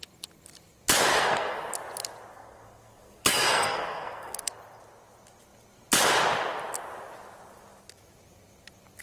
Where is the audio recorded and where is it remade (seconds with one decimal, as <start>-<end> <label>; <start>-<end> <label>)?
0.0-1.1 recorded; 1.1-1.7 remade; 1.7-2.3 recorded; 2.3-4.5 remade; 4.5-9.0 recorded